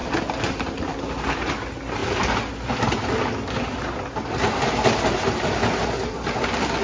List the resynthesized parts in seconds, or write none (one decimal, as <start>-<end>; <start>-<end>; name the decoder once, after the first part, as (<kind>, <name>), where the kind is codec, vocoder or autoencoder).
none